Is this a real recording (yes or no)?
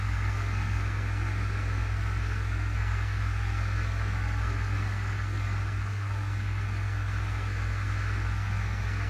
no